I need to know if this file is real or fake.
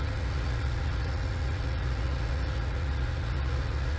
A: fake